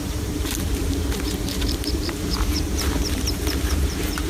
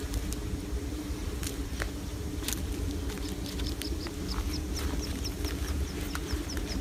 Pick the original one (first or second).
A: second